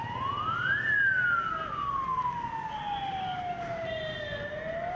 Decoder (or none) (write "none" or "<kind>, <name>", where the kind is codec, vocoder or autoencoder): none